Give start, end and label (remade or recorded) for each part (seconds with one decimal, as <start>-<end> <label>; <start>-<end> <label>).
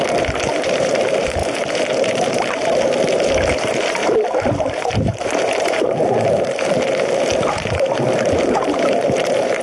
0.0-9.6 remade